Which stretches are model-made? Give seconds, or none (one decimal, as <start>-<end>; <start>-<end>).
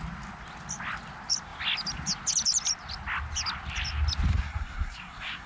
4.3-5.5